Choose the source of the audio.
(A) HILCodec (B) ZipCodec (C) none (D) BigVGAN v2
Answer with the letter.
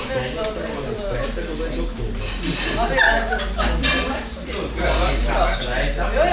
C